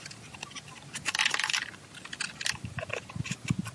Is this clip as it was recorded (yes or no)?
yes